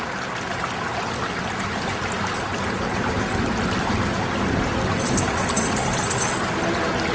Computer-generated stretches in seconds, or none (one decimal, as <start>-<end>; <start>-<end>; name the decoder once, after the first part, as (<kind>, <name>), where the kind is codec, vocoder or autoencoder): none